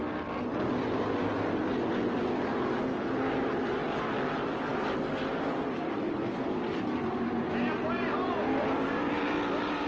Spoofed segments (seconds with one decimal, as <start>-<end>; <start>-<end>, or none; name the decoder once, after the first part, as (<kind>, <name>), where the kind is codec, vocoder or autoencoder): 4.7-7.5 (vocoder, BigVGAN v2)